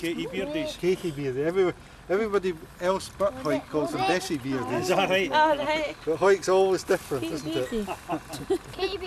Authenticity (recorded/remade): recorded